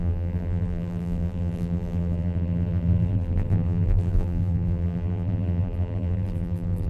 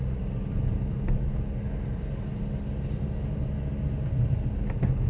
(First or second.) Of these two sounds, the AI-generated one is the first